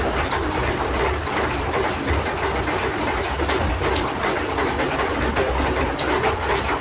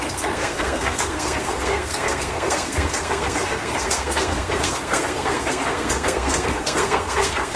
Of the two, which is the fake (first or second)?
second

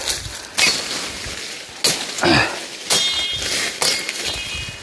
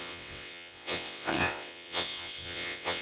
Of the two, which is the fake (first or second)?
second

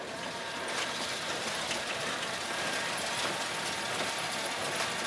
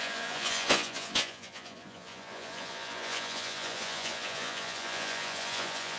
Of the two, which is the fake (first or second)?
second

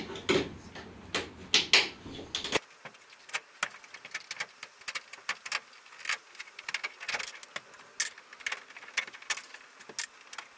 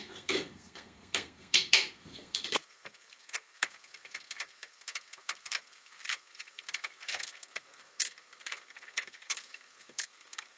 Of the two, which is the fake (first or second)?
second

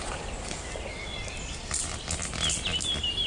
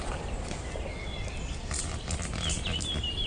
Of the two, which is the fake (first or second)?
second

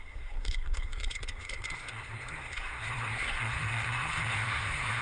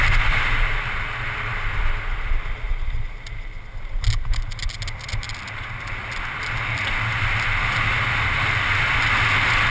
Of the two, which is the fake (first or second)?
first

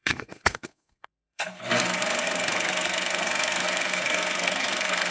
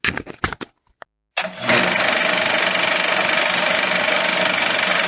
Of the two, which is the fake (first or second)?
first